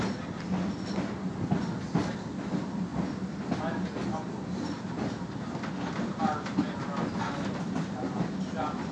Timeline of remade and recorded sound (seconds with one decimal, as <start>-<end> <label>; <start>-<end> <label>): 0.0-8.9 recorded

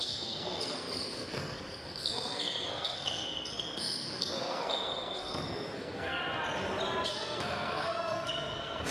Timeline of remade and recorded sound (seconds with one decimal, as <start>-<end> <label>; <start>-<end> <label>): 0.0-6.2 remade; 6.2-7.1 recorded; 7.1-8.9 remade

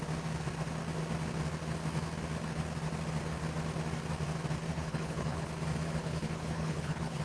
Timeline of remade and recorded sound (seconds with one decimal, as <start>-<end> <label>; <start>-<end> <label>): 0.0-4.7 recorded; 4.7-5.5 remade; 5.5-6.0 recorded; 6.0-7.2 remade

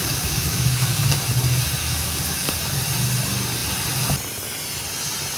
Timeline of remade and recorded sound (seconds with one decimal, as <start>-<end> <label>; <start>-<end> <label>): 0.0-1.0 remade; 1.0-1.8 recorded; 1.8-2.5 remade; 2.5-5.4 recorded

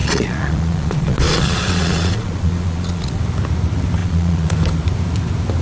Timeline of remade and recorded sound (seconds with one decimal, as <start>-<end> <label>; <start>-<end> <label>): 0.0-3.2 remade; 3.2-4.0 recorded; 4.0-4.5 remade; 4.5-5.6 recorded

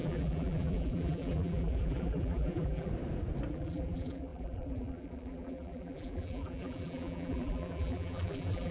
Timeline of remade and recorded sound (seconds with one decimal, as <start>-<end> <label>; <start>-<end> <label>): 0.0-2.9 remade; 2.9-3.5 recorded; 3.5-8.7 remade